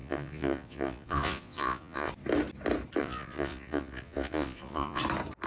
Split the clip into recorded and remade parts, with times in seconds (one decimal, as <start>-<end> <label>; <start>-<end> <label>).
0.0-2.1 remade; 2.1-3.0 recorded; 3.0-5.0 remade; 5.0-5.5 recorded